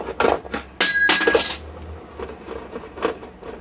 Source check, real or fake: real